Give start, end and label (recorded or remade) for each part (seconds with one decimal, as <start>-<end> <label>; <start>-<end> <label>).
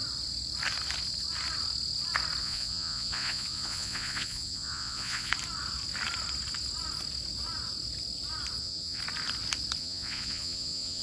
0.0-2.4 recorded; 2.4-5.3 remade; 5.3-8.6 recorded; 8.6-9.0 remade; 9.0-9.8 recorded; 9.8-11.0 remade